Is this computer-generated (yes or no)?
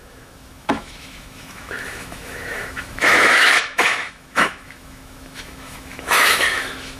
yes